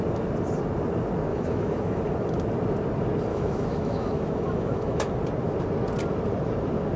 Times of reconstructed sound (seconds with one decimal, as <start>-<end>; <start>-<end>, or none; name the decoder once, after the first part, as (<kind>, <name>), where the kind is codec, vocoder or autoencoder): 1.3-2.0 (autoencoder, DAC-VAE); 3.3-5.1